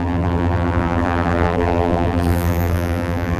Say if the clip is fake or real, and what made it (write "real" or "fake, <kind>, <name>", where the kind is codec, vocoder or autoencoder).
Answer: fake, vocoder, BigVGAN v2